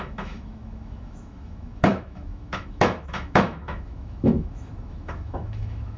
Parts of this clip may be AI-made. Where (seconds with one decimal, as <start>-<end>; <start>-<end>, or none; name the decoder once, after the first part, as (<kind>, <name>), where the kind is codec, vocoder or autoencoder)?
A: 0.0-6.0 (autoencoder, DAC-VAE)